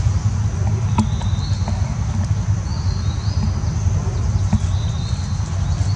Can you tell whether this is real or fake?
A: real